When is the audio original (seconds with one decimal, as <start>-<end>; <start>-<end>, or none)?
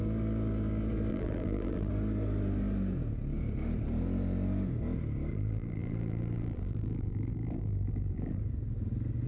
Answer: 0.0-1.1; 1.9-5.3; 8.4-9.3